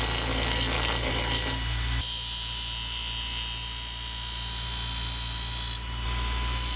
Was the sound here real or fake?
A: real